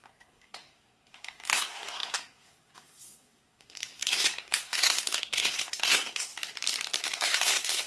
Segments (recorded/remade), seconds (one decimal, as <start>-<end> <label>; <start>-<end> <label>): 0.0-6.3 remade; 6.3-7.0 recorded; 7.0-7.9 remade